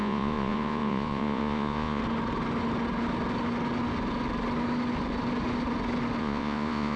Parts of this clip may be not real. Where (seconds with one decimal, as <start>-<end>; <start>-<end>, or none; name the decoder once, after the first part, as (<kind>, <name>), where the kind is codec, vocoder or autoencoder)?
0.0-2.0 (vocoder, Vocos); 6.2-7.0